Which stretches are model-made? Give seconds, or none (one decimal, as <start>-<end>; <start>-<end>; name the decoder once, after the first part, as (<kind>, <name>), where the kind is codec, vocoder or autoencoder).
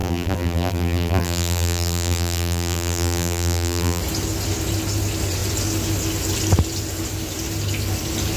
0.0-4.0 (vocoder, BigVGAN v2)